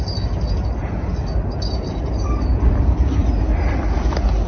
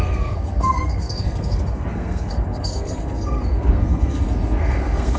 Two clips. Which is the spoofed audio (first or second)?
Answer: second